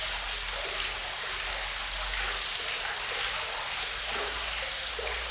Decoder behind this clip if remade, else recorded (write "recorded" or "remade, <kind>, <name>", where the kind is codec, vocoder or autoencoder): recorded